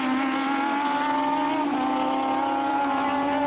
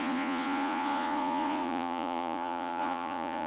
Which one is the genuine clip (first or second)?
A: first